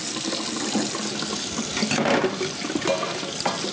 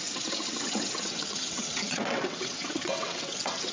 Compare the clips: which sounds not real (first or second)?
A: second